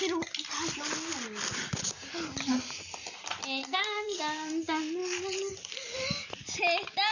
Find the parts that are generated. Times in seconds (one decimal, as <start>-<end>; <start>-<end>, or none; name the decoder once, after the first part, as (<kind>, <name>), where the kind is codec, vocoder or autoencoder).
3.6-4.2 (codec, SNAC)